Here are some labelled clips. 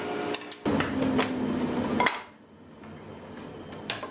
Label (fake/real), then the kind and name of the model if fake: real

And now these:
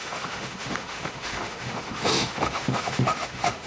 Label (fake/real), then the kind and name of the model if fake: fake, autoencoder, DAC-VAE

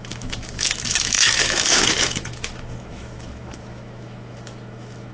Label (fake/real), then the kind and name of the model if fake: fake, autoencoder, DAC-VAE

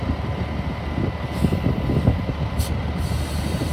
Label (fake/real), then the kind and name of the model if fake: real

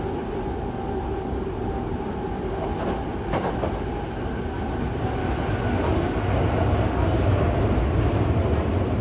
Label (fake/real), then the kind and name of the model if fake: real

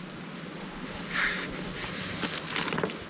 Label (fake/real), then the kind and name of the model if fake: real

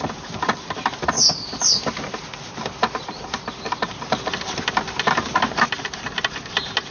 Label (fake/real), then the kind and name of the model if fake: real